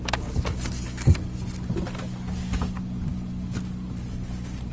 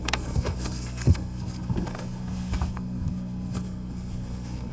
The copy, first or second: second